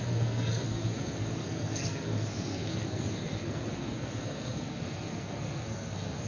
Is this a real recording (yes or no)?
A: no